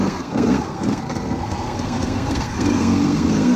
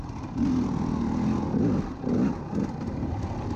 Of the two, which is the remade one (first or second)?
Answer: first